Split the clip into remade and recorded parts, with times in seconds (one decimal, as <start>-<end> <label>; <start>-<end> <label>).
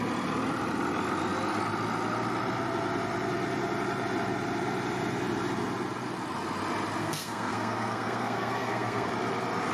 0.0-7.0 recorded; 7.0-9.1 remade; 9.1-9.7 recorded